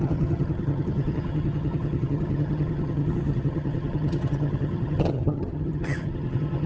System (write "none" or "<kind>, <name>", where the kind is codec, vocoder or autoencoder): vocoder, HiFi-GAN